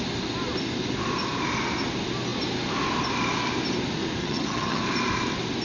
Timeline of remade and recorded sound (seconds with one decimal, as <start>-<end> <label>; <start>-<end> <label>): 0.0-4.2 recorded; 4.2-4.8 remade; 4.8-5.6 recorded